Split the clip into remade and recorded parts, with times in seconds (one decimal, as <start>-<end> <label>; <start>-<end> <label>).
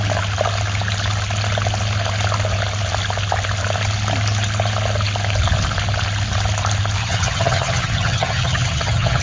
0.0-7.0 recorded; 7.0-9.2 remade